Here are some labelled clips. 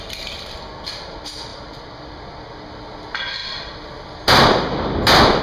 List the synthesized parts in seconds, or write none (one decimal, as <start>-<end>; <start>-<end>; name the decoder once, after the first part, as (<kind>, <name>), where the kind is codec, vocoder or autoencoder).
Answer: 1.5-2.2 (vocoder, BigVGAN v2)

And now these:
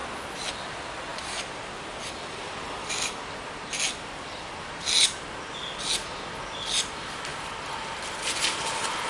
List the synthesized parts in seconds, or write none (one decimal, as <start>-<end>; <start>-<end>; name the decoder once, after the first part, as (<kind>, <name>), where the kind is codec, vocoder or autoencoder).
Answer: 1.1-2.5 (vocoder, BigVGAN v2)

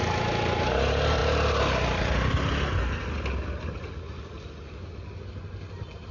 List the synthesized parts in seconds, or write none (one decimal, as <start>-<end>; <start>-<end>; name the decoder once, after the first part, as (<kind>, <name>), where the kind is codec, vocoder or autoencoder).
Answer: none

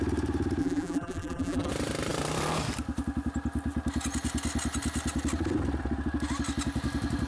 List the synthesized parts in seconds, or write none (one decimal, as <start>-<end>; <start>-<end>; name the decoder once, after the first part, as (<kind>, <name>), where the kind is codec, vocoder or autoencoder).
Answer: 0.6-1.7 (vocoder, BigVGAN v2)